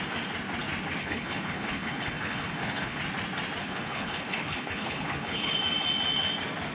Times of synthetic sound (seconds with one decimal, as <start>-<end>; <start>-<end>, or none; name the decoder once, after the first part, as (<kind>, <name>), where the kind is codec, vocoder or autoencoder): 1.0-3.0 (codec, HILCodec); 3.6-5.5